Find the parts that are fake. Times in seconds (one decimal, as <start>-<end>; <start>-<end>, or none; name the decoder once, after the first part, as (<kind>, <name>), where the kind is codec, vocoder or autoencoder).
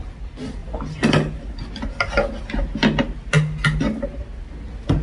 0.6-1.7 (vocoder, BigVGAN v2)